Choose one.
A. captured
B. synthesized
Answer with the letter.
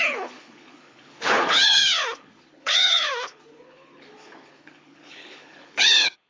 B